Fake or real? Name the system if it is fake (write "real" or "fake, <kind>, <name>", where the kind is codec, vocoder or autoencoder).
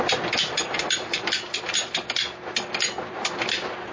real